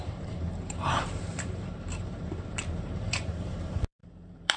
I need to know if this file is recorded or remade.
remade